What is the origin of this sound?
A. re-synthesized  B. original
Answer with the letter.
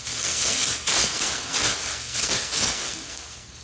A